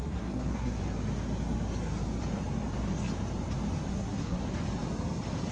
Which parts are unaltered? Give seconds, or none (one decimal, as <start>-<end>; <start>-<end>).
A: 0.8-3.9; 4.4-5.5